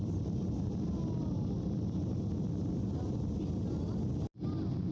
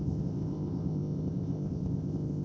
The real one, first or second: first